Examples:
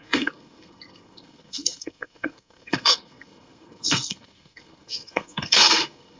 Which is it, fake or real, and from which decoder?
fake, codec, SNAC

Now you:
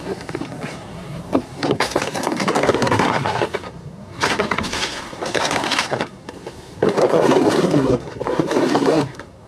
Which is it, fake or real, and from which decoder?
fake, codec, SNAC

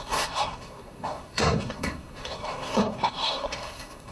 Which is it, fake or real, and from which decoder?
fake, codec, SNAC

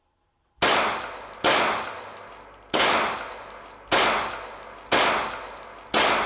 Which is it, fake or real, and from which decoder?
real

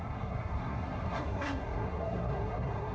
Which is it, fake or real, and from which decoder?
fake, codec, SNAC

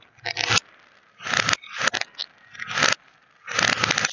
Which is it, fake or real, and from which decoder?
real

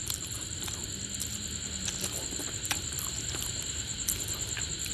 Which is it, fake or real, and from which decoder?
real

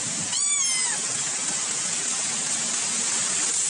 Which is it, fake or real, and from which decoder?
real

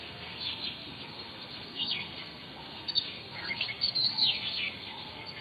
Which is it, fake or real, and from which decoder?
fake, codec, SNAC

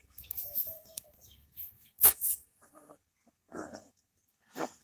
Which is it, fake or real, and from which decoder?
fake, codec, SNAC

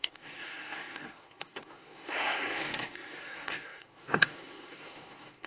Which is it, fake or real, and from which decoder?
fake, codec, SNAC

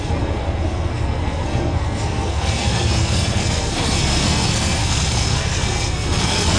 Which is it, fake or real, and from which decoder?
fake, codec, SNAC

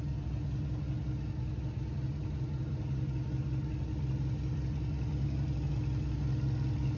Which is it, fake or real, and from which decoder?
real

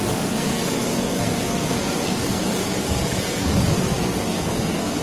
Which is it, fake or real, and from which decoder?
fake, codec, SNAC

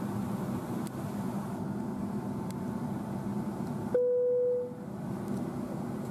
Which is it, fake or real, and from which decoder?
real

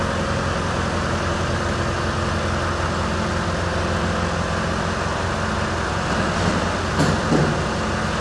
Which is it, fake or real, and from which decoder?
real